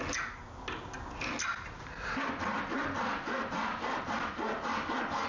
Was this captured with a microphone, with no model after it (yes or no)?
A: yes